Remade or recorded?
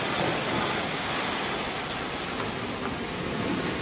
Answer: recorded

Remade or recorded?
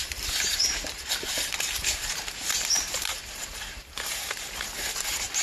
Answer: remade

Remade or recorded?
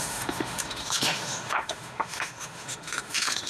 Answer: remade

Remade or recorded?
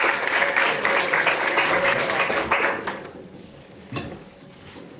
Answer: remade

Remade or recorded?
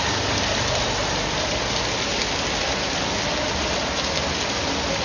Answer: recorded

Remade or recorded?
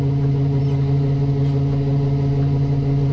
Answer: recorded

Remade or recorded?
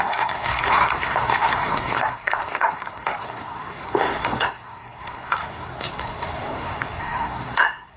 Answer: remade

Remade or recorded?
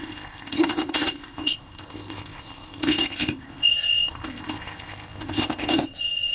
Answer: remade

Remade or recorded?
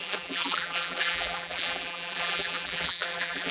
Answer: remade